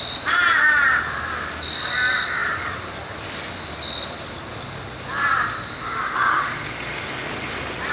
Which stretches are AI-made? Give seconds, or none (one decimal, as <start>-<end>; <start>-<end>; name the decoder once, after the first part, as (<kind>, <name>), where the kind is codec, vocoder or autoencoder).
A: 2.4-3.2 (vocoder, BigVGAN v2)